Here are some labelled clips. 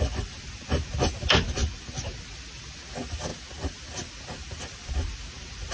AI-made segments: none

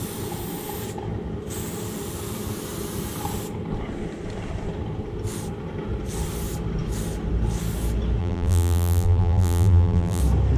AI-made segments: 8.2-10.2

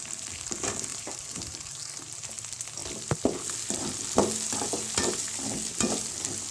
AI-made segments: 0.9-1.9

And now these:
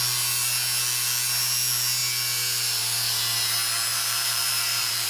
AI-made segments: 3.9-5.1